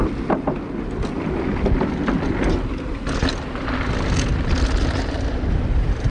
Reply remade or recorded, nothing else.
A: recorded